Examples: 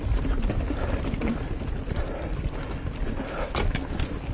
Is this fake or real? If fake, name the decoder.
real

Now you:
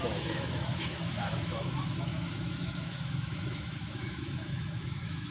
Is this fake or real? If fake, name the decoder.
fake, autoencoder, DAC-VAE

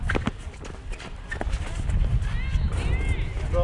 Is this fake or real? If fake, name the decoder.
real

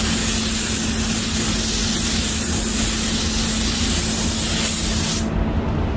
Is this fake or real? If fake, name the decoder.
real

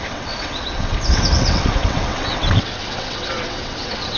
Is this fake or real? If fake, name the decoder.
fake, vocoder, WaveNeXt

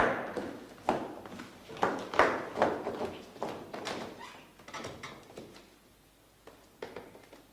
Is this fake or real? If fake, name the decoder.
real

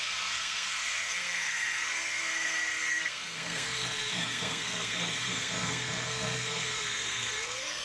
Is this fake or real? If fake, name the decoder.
fake, codec, SNAC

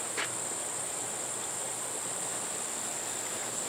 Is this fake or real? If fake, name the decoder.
real